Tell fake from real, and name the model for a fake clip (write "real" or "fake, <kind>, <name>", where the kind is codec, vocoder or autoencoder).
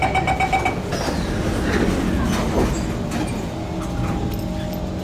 real